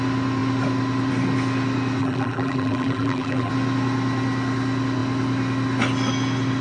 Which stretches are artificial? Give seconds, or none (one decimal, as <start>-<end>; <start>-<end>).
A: 2.0-3.5